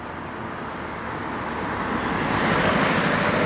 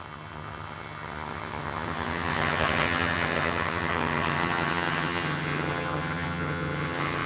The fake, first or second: second